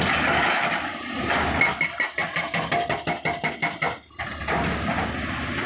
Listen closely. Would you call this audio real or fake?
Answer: real